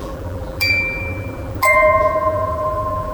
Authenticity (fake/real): fake